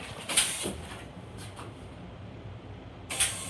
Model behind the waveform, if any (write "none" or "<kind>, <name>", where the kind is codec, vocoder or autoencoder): vocoder, BigVGAN v2